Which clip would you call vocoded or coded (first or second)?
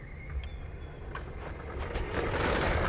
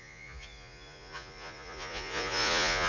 second